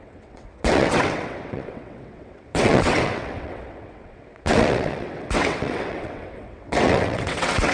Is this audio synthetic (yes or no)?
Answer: yes